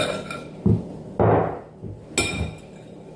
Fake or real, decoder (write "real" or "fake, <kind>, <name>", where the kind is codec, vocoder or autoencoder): real